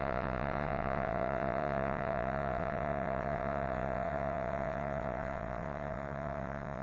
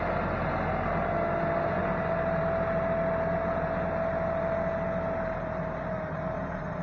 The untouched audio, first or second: second